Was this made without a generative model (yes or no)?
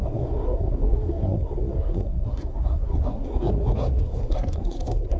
no